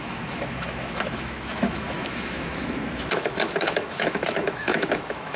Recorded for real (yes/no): no